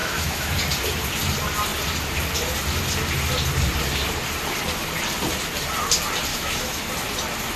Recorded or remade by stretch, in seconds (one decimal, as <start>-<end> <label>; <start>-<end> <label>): 0.0-0.5 remade; 0.5-6.3 recorded; 6.3-6.8 remade; 6.8-7.6 recorded

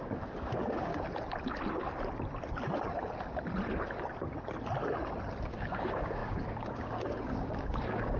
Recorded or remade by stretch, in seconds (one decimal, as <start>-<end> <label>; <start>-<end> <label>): 0.0-0.9 remade; 0.9-5.4 recorded; 5.4-8.2 remade